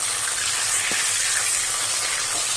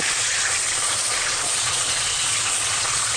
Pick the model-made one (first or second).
second